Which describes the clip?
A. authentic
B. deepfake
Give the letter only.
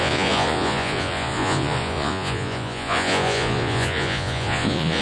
B